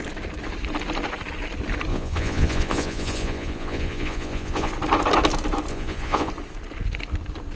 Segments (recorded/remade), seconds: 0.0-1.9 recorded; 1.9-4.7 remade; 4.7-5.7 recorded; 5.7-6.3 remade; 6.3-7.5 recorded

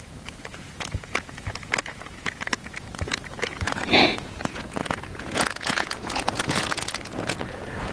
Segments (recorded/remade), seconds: 0.0-7.9 remade

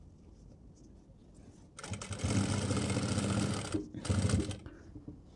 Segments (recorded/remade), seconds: 0.0-5.4 recorded

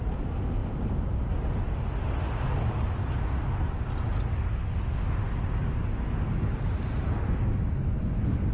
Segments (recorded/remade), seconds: 0.0-8.5 recorded

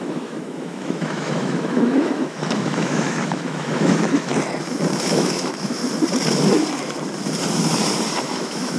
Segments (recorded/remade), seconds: 0.0-4.3 remade; 4.3-5.1 recorded; 5.1-5.8 remade; 5.8-8.2 recorded; 8.2-8.8 remade